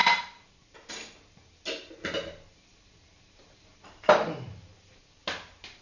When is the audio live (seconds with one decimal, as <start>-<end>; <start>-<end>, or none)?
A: 0.0-2.7; 5.0-5.8